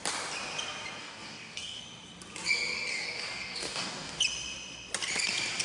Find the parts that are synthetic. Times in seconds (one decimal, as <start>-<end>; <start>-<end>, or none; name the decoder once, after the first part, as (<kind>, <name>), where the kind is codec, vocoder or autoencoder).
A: 1.0-1.8 (codec, DAC); 2.9-4.2

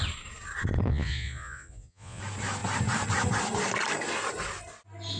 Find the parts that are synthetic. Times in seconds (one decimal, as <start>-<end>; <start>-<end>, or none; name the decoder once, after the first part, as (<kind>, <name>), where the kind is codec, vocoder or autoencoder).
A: 0.9-2.2 (vocoder, Vocos)

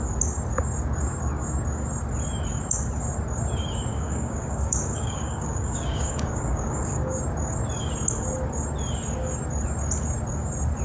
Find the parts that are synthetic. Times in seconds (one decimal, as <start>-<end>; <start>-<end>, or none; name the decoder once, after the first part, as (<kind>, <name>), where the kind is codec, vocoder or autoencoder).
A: 3.9-7.2 (codec, DAC)

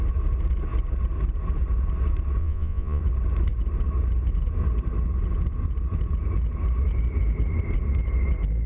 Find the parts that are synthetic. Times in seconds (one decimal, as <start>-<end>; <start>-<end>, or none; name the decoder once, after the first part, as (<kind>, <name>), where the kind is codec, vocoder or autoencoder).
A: 2.4-3.0 (vocoder, Vocos)

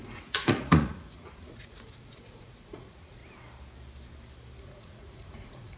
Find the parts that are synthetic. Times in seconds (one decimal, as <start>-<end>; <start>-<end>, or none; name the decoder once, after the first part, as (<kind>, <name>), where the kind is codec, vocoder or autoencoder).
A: 0.0-3.2 (vocoder, Vocos); 4.6-5.8

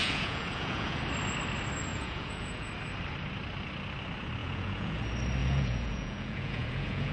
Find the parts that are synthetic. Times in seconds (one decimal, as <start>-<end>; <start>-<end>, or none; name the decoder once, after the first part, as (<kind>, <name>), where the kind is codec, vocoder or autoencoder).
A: 0.0-1.0 (vocoder, Vocos); 1.9-2.7; 4.4-5.0; 5.4-7.1

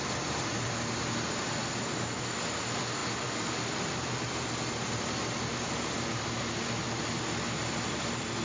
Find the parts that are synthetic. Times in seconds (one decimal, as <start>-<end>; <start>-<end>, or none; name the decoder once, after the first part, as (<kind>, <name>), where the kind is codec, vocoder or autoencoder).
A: none